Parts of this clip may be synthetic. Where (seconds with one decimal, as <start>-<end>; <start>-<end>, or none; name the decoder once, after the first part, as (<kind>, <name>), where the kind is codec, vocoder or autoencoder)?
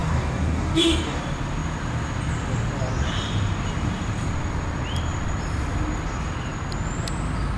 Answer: 0.0-1.2 (codec, DAC)